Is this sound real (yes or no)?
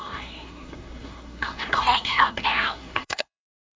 no